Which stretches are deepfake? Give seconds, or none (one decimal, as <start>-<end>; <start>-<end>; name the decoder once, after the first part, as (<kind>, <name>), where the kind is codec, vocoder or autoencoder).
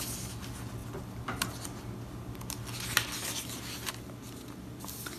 none